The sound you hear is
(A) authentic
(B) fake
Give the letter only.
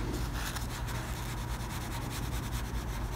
A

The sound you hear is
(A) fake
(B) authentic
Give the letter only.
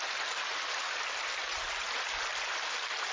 B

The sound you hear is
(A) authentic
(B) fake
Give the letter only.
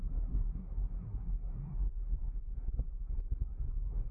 B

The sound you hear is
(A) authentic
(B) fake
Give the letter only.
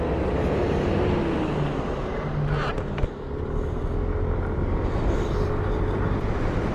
A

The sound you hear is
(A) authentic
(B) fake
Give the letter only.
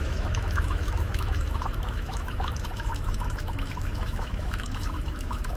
B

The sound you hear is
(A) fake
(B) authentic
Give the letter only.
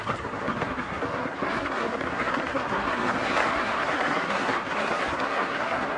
A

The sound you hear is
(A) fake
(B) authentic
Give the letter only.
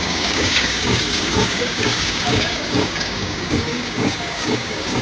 A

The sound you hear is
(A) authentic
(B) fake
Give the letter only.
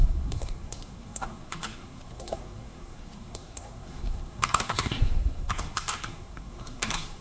B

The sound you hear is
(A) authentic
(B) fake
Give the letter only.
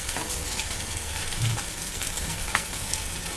B